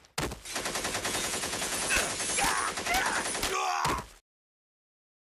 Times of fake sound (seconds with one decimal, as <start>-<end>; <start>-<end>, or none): 1.0-2.0

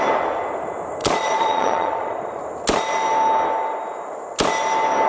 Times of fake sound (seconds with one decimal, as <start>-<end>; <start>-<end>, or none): 1.0-2.4

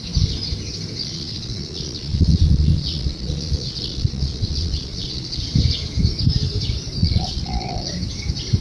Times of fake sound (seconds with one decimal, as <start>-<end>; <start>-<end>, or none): 1.0-5.4; 7.0-7.9

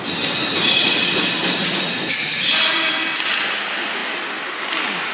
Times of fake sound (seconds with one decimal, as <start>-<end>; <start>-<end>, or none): 0.6-1.2; 1.6-2.4

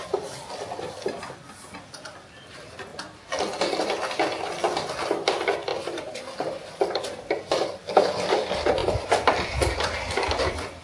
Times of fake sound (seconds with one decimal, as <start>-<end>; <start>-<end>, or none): 0.0-2.9; 3.9-10.8

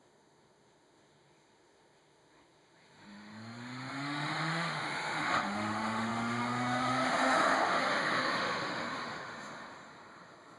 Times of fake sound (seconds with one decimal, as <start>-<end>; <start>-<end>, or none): 0.0-10.6

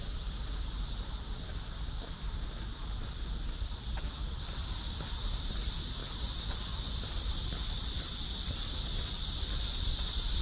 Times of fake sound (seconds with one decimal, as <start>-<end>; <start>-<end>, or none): none

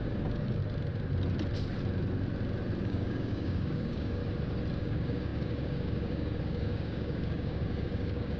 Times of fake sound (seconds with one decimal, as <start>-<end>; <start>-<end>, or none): 0.0-0.6; 2.8-4.2; 4.8-8.4